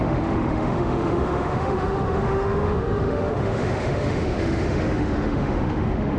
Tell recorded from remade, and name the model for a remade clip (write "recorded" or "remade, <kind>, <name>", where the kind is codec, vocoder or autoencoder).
remade, autoencoder, DAC-VAE